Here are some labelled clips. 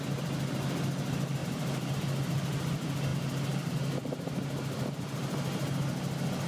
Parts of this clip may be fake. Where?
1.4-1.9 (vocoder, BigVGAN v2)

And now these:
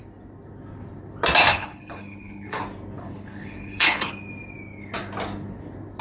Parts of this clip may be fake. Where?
1.5-2.6 (codec, HILCodec); 3.0-4.1